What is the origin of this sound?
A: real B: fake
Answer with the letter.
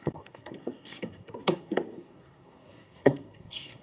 B